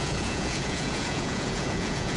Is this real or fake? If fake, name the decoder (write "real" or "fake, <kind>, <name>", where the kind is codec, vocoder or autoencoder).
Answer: fake, vocoder, Vocos